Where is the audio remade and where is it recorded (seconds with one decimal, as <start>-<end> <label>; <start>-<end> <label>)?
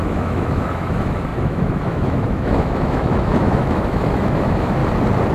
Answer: 0.0-4.8 remade; 4.8-5.3 recorded